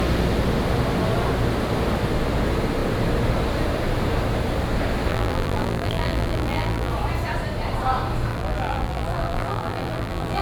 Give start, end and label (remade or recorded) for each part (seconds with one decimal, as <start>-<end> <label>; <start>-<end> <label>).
0.0-5.1 recorded; 5.1-6.9 remade; 6.9-8.3 recorded; 8.3-10.4 remade